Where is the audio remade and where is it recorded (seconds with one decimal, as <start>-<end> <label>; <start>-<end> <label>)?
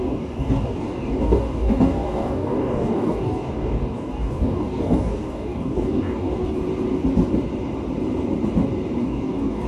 0.0-6.6 remade; 6.6-9.0 recorded; 9.0-9.7 remade